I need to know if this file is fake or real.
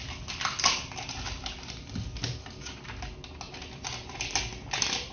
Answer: real